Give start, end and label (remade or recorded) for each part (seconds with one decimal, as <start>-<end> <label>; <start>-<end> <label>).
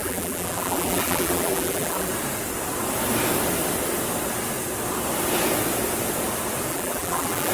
0.0-2.1 remade; 2.1-6.7 recorded; 6.7-7.5 remade